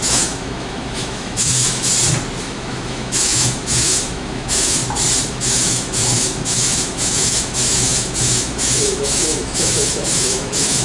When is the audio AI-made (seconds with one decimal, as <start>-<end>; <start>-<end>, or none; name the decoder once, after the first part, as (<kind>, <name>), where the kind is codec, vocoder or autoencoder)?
0.0-1.9 (autoencoder, DAC-VAE); 2.4-4.8; 5.3-10.8